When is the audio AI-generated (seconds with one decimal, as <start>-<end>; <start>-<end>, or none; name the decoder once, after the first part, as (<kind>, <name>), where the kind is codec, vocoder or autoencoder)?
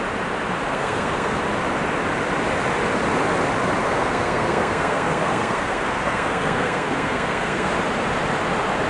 0.7-1.4 (codec, SNAC); 3.8-7.7